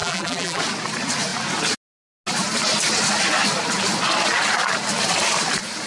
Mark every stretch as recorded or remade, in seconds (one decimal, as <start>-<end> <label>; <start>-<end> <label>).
0.0-0.6 remade; 0.6-5.9 recorded